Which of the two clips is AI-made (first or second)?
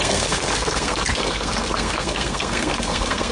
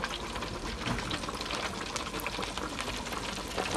first